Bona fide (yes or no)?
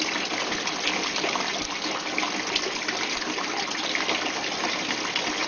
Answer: yes